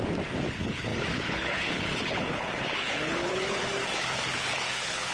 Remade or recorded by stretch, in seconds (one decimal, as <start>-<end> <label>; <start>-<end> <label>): 0.0-0.5 recorded; 0.5-5.1 remade